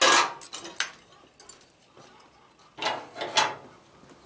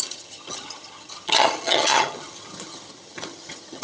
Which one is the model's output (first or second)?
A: second